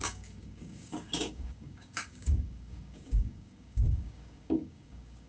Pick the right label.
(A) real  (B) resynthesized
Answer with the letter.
B